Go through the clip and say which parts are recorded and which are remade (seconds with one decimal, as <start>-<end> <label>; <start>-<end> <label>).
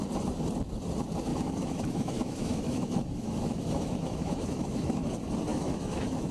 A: 0.0-1.3 recorded; 1.3-5.1 remade; 5.1-5.5 recorded; 5.5-6.3 remade